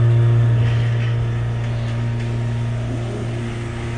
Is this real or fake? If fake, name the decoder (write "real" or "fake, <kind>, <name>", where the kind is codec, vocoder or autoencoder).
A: real